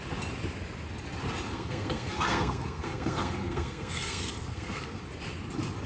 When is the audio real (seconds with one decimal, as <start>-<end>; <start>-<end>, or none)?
0.0-1.5; 5.0-5.9